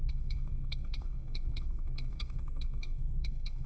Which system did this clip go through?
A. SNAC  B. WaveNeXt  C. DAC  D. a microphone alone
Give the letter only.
A